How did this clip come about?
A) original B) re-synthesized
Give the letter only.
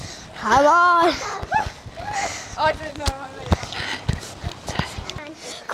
A